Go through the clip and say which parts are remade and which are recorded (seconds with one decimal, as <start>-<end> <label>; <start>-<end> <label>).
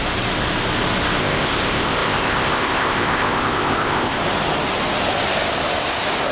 0.0-1.2 recorded; 1.2-4.2 remade; 4.2-6.3 recorded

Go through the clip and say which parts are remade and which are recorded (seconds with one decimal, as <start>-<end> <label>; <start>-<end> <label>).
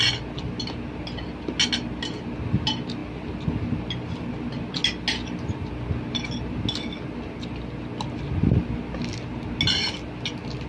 0.0-10.7 recorded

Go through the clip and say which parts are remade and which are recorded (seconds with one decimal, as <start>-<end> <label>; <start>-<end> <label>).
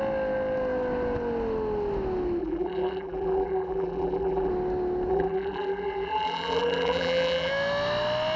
0.0-2.4 recorded; 2.4-4.5 remade; 4.5-5.1 recorded; 5.1-7.5 remade; 7.5-8.4 recorded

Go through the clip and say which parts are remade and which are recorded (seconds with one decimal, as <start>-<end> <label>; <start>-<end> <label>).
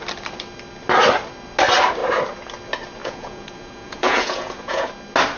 0.0-3.0 recorded; 3.0-4.9 remade; 4.9-5.4 recorded